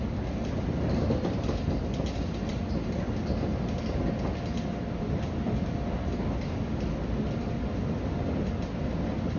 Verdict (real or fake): real